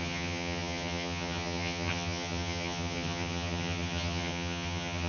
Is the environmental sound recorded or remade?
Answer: remade